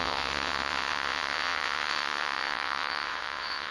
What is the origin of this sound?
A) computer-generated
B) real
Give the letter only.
A